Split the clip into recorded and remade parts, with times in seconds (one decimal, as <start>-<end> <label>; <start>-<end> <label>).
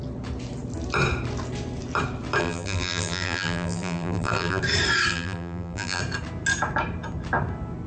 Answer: 0.0-2.4 recorded; 2.4-4.6 remade; 4.6-5.1 recorded; 5.1-6.0 remade; 6.0-7.9 recorded